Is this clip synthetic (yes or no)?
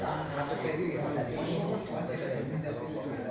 yes